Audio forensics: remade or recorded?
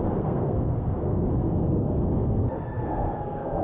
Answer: remade